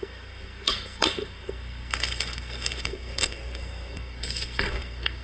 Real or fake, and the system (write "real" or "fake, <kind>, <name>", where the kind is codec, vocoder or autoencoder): fake, codec, SNAC